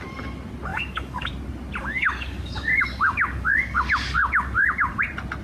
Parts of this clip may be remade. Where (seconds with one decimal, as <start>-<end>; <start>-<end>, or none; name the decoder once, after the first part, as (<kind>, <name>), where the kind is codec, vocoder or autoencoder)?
0.7-1.3 (codec, DAC); 1.8-5.0